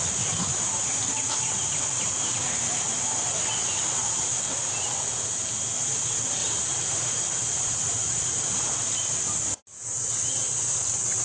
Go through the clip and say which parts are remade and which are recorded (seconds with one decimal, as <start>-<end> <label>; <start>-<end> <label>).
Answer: 0.0-0.5 recorded; 0.5-1.3 remade; 1.3-6.4 recorded; 6.4-8.9 remade; 8.9-11.2 recorded